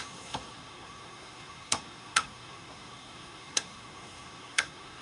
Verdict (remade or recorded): remade